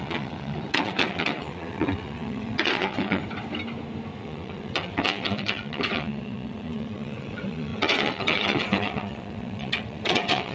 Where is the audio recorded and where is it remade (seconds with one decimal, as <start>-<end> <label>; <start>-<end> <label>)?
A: 0.0-3.2 remade; 3.2-4.2 recorded; 4.2-10.5 remade